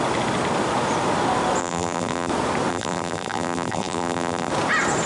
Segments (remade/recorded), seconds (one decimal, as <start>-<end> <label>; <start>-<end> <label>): 0.0-1.6 recorded; 1.6-2.3 remade; 2.3-2.7 recorded; 2.7-4.5 remade; 4.5-5.1 recorded

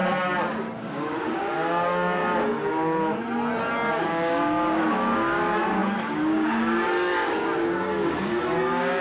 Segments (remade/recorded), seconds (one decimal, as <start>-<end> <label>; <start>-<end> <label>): 0.0-0.8 recorded; 0.8-2.2 remade; 2.2-3.9 recorded; 3.9-9.0 remade

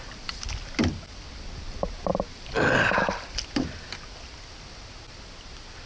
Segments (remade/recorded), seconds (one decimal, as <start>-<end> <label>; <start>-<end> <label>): 0.0-5.9 recorded

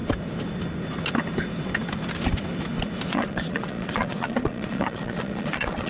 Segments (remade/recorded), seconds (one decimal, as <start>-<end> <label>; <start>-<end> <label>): 0.0-3.1 recorded; 3.1-5.9 remade